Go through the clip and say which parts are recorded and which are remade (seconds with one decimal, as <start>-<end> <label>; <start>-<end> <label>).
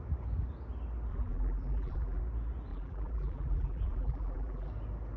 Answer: 0.0-1.1 recorded; 1.1-2.2 remade; 2.2-2.7 recorded; 2.7-4.7 remade; 4.7-5.2 recorded